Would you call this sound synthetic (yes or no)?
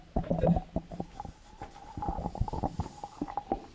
no